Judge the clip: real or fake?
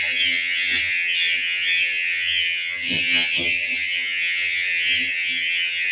fake